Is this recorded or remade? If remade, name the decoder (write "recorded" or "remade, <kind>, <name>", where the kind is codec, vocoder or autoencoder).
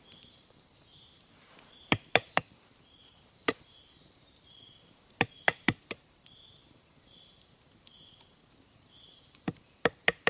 remade, vocoder, BigVGAN v2